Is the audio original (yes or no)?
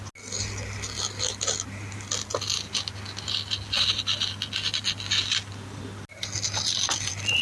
yes